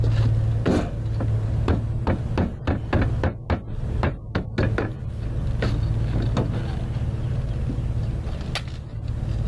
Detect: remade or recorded recorded